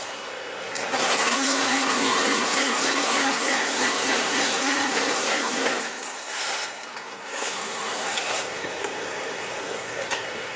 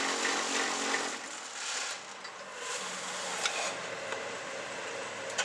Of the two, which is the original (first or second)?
second